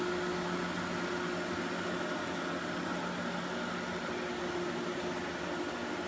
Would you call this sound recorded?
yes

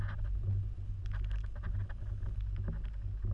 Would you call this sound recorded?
yes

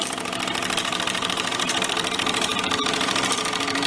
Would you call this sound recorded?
no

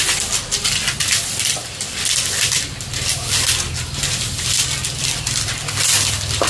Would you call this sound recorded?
yes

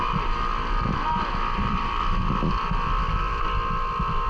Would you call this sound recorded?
yes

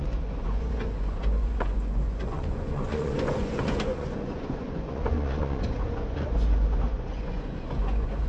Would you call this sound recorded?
no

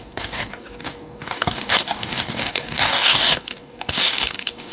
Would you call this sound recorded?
no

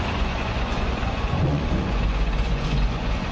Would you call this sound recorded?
no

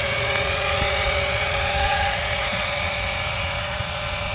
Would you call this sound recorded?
no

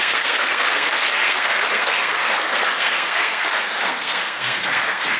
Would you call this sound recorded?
no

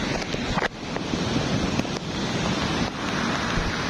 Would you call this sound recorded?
yes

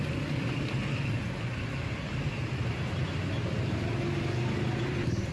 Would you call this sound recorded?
yes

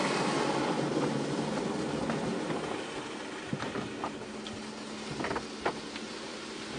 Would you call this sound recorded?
yes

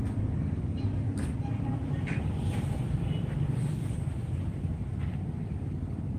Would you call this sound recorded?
no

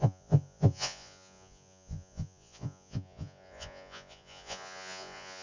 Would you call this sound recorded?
no